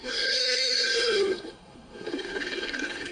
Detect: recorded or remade remade